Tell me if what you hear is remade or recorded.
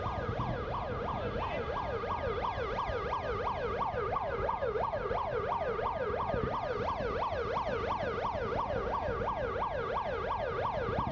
recorded